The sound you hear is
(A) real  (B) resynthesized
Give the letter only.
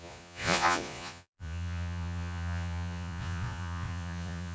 B